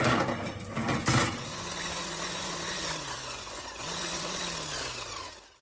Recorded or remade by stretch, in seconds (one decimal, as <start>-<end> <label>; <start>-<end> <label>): 0.0-1.5 recorded; 1.5-4.4 remade; 4.4-5.6 recorded